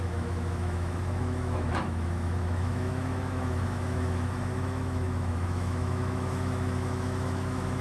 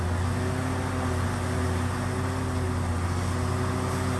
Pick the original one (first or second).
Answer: second